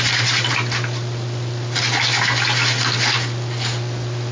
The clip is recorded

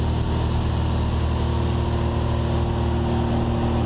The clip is recorded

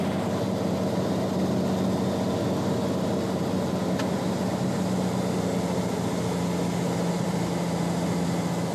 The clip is recorded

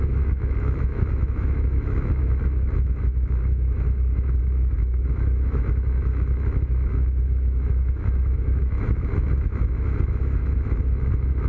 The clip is remade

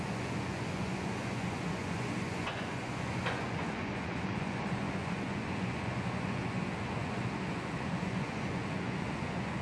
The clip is remade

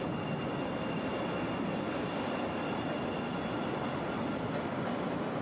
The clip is recorded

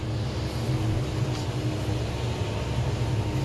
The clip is recorded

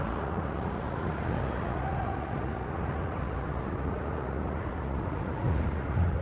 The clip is remade